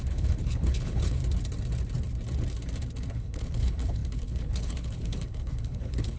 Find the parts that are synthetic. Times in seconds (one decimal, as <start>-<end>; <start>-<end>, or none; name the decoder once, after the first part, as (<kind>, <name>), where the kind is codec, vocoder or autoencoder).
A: 0.0-1.2 (codec, HILCodec); 3.1-6.2